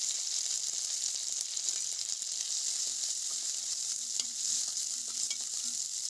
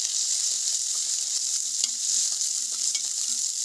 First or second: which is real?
first